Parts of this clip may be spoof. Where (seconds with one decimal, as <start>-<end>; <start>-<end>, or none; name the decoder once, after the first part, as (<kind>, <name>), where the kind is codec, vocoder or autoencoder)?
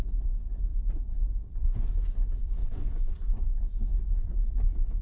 2.6-3.2 (vocoder, Vocos)